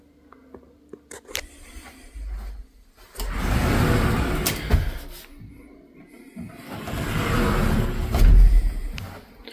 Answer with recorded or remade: recorded